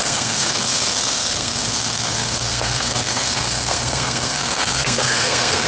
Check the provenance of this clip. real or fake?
fake